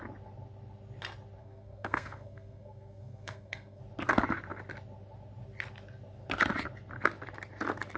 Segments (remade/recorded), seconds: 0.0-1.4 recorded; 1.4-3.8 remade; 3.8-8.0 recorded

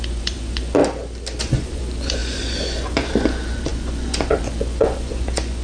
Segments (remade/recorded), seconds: 0.0-0.8 remade; 0.8-1.4 recorded; 1.4-5.6 remade

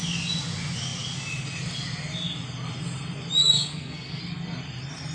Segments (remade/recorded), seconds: 0.0-3.4 recorded; 3.4-4.2 remade; 4.2-5.1 recorded